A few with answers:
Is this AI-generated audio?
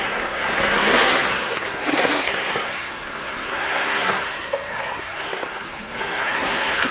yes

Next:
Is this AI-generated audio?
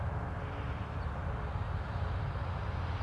no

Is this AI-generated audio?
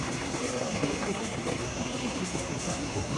yes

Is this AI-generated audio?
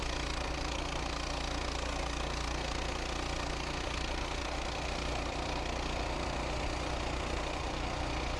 no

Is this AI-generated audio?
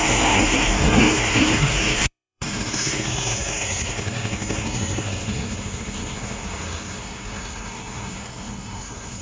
yes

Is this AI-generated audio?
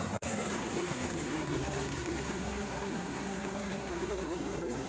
yes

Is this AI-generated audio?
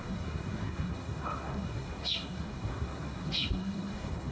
yes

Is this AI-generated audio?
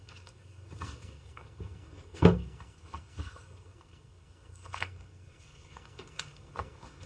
yes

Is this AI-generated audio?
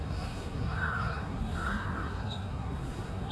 yes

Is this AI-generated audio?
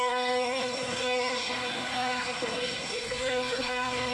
yes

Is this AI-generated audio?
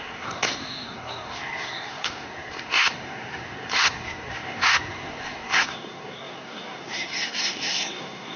yes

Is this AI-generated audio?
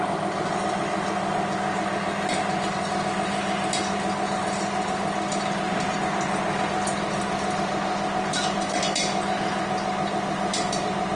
no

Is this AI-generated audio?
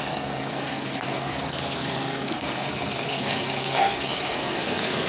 yes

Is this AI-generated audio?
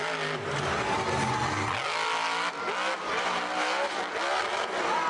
no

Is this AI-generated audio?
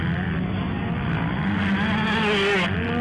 no